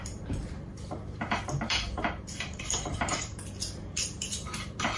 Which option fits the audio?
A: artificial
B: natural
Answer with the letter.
A